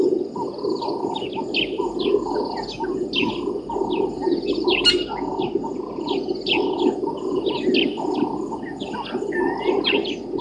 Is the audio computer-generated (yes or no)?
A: no